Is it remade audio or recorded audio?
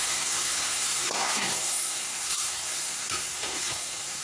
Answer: remade